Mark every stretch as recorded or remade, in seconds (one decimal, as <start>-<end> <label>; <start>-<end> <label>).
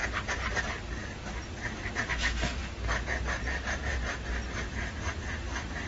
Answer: 0.0-2.6 recorded; 2.6-3.8 remade; 3.8-5.9 recorded